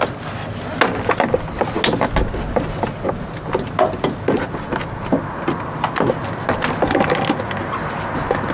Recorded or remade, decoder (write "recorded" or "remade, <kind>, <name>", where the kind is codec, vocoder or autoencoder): recorded